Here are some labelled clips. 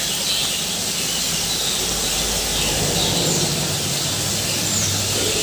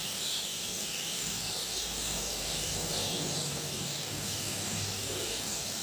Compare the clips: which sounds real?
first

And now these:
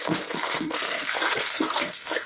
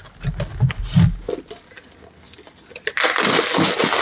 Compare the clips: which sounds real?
second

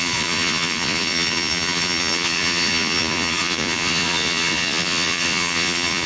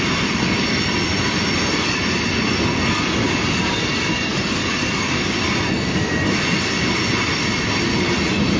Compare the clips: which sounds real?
second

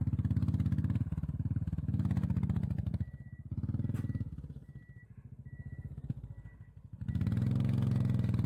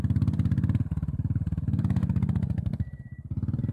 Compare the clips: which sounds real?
first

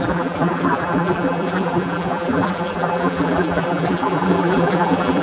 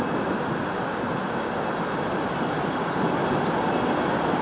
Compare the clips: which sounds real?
second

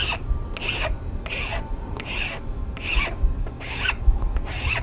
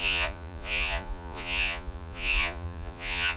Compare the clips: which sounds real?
first